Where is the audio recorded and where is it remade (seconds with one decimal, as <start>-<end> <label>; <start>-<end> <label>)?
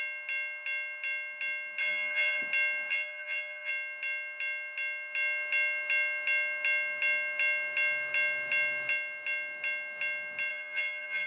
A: 0.0-1.8 recorded; 1.8-2.4 remade; 2.4-2.9 recorded; 2.9-3.7 remade; 3.7-10.5 recorded; 10.5-11.3 remade